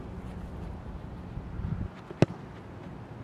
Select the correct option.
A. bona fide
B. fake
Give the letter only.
A